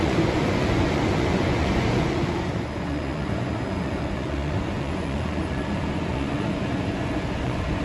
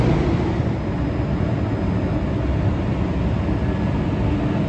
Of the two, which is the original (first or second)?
second